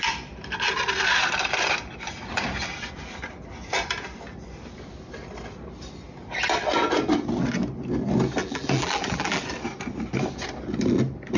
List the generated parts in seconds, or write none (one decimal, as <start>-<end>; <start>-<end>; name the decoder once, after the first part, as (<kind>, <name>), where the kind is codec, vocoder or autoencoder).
8.4-9.4 (vocoder, BigVGAN v2)